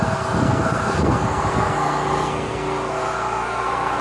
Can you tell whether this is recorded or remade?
remade